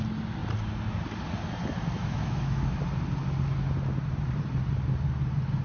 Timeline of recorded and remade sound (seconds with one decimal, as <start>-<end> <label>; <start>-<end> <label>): 0.0-2.0 recorded; 2.0-2.8 remade; 2.8-5.6 recorded